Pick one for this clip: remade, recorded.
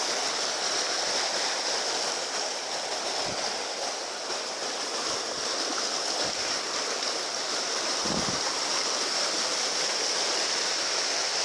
recorded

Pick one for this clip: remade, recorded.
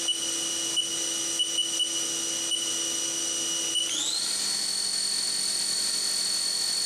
recorded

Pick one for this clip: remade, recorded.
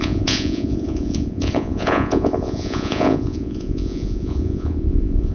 remade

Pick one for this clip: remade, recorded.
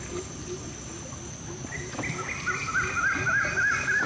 recorded